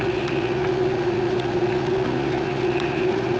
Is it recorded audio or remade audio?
remade